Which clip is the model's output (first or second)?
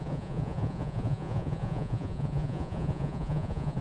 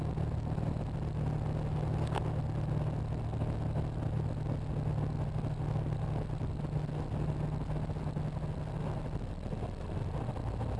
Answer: first